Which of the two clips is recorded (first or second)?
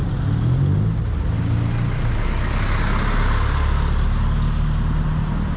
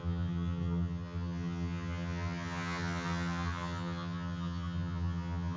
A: first